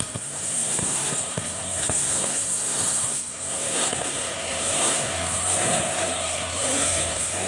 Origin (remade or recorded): remade